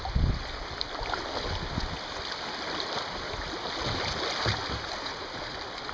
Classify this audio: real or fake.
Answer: real